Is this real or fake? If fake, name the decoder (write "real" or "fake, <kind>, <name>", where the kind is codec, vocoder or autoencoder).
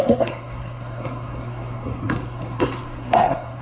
fake, codec, SNAC